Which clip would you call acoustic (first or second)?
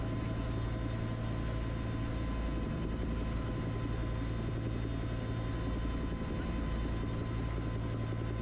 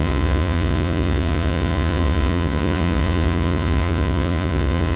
first